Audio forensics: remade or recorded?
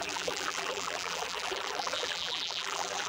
remade